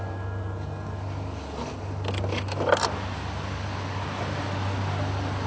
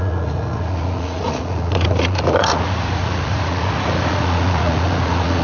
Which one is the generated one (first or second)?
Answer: second